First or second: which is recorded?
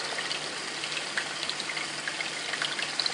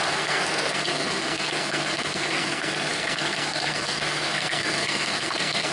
first